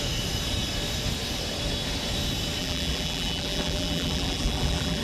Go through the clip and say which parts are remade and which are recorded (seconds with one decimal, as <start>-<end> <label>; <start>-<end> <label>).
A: 0.0-2.6 recorded; 2.6-5.0 remade

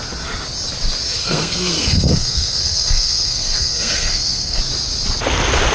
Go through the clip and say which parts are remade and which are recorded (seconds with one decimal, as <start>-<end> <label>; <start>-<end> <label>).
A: 0.0-1.2 recorded; 1.2-4.6 remade; 4.6-5.7 recorded

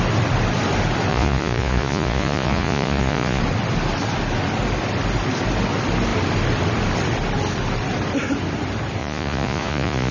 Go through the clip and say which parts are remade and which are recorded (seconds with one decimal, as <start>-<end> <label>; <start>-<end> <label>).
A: 0.0-1.1 recorded; 1.1-3.4 remade; 3.4-9.0 recorded; 9.0-10.1 remade

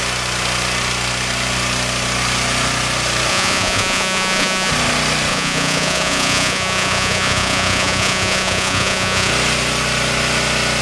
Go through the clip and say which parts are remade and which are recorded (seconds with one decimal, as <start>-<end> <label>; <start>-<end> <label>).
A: 0.0-3.3 recorded; 3.3-4.7 remade; 4.7-5.3 recorded; 5.3-9.3 remade; 9.3-10.8 recorded

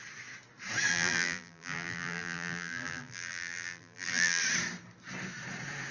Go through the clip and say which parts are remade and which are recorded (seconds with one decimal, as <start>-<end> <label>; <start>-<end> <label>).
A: 0.0-0.9 recorded; 0.9-4.4 remade; 4.4-5.9 recorded

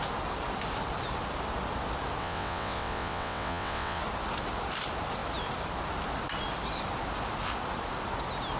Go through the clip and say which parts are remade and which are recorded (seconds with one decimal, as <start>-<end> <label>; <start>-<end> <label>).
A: 0.0-2.2 recorded; 2.2-4.0 remade; 4.0-8.6 recorded

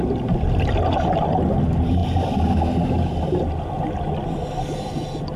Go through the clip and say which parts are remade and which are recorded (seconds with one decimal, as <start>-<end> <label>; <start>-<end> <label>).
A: 0.0-5.4 recorded